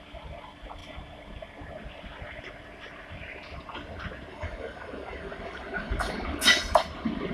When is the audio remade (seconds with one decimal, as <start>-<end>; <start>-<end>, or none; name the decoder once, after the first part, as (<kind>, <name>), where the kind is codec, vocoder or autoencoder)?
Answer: 4.3-6.6 (codec, DAC)